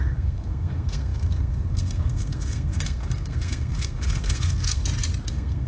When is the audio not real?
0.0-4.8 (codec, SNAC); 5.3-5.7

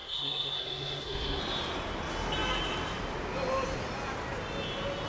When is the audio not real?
0.0-1.4 (codec, SNAC)

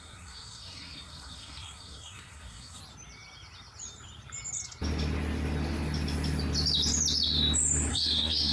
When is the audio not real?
0.0-2.8 (codec, SNAC); 7.9-8.5

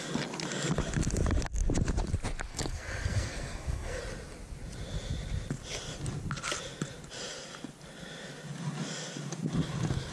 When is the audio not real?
2.5-4.0 (codec, SNAC)